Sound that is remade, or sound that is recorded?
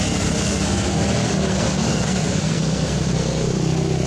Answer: remade